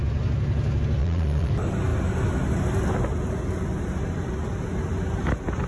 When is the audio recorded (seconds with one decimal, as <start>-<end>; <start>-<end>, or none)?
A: 0.0-1.0; 1.5-5.7